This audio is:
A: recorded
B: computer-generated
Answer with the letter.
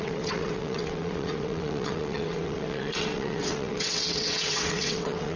B